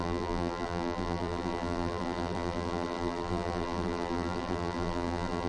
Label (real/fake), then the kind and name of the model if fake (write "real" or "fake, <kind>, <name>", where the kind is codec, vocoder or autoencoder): fake, vocoder, BigVGAN v2